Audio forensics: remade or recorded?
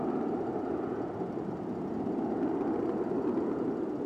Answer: recorded